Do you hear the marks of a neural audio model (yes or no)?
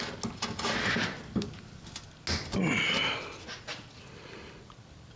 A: no